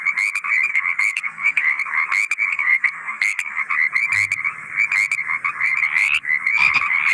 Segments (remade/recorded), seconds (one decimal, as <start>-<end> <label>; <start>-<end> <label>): 0.0-0.7 recorded; 0.7-1.8 remade; 1.8-2.5 recorded; 2.5-3.6 remade; 3.6-7.1 recorded